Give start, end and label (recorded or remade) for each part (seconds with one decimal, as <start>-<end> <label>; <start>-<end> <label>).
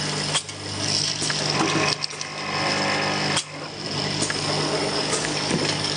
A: 0.0-4.8 recorded; 4.8-6.0 remade